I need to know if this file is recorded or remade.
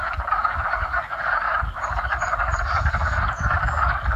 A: remade